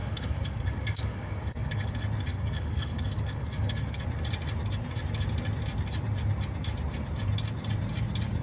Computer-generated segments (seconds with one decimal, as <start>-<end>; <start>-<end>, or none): 0.0-1.9; 2.3-4.0